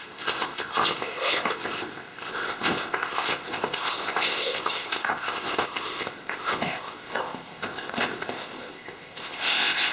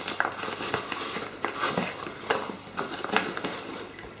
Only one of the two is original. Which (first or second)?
second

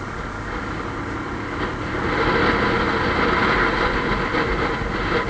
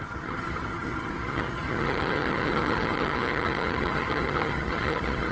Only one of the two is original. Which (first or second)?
first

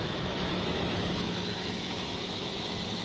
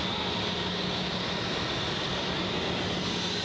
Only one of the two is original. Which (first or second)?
second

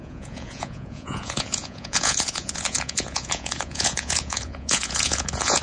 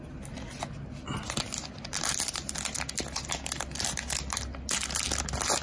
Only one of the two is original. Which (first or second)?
second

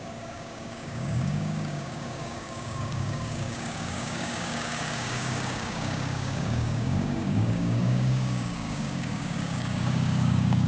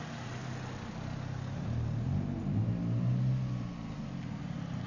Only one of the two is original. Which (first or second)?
second